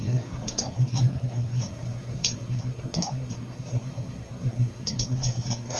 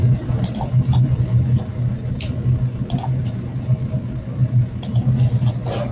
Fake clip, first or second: first